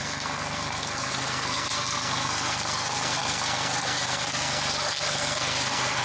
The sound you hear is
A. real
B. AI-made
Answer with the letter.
B